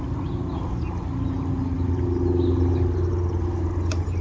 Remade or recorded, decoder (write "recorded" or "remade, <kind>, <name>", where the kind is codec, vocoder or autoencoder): recorded